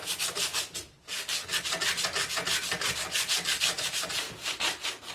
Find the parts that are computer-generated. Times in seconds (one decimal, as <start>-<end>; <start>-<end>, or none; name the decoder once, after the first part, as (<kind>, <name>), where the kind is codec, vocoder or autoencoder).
none